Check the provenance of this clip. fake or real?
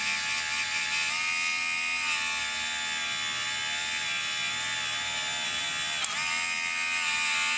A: real